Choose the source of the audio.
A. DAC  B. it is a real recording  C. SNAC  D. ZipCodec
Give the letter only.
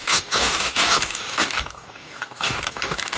A